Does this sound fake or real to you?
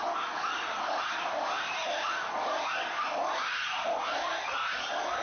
real